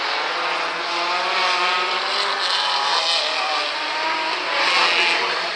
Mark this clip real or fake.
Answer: real